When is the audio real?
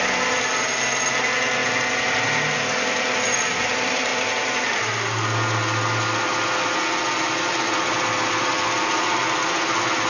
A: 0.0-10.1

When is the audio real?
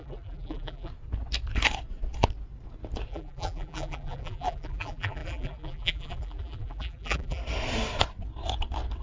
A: 0.9-3.1; 7.4-9.0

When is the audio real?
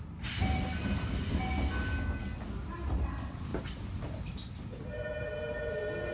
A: 0.0-6.1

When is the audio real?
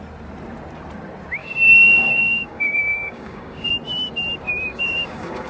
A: 0.0-1.4; 3.7-4.7